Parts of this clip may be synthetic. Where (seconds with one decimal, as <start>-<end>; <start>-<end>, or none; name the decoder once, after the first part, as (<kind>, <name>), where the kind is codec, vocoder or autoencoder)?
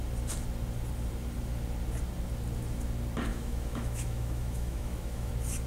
3.3-5.3 (autoencoder, DAC-VAE)